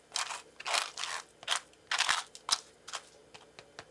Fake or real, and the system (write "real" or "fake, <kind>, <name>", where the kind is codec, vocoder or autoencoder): real